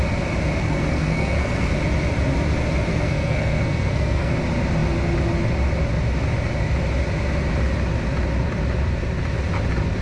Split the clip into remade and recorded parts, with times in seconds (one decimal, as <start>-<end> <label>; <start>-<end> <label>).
0.0-0.6 recorded; 0.6-1.7 remade; 1.7-2.9 recorded; 2.9-4.3 remade; 4.3-10.0 recorded